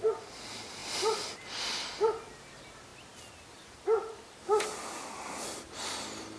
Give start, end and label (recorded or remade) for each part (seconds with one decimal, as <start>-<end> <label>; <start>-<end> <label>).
0.0-6.4 recorded